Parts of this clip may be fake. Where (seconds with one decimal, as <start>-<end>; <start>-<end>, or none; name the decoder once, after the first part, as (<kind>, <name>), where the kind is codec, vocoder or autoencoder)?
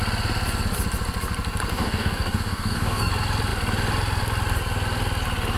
1.7-3.1 (codec, DAC)